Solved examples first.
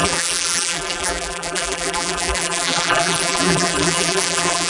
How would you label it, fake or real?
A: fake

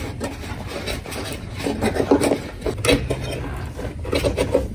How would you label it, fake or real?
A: real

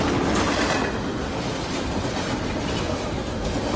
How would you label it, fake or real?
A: real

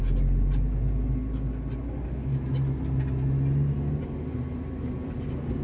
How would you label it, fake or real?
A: real